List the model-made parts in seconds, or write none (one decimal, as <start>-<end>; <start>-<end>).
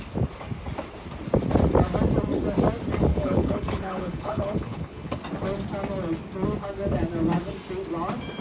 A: 3.1-5.2